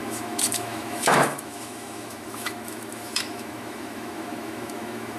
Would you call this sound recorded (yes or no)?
no